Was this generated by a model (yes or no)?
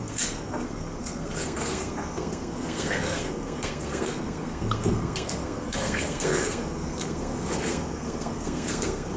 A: yes